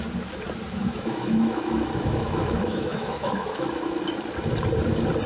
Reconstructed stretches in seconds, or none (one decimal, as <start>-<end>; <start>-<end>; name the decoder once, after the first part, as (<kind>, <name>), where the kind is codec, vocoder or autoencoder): 0.8-4.0 (autoencoder, DAC-VAE)